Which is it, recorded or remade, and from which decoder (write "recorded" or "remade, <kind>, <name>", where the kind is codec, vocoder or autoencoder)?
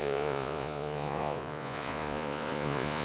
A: remade, vocoder, Vocos